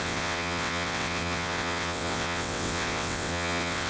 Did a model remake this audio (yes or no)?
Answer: yes